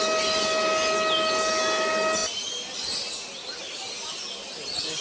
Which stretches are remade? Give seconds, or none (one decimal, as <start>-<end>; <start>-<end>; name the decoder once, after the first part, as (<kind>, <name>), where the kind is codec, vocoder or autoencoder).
none